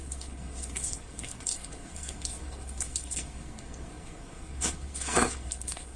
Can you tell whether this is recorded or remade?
remade